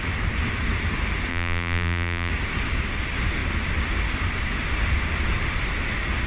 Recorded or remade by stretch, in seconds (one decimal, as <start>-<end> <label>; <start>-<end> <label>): 0.0-1.3 recorded; 1.3-2.3 remade; 2.3-6.3 recorded